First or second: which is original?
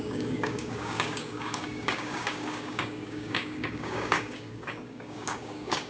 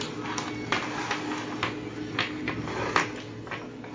second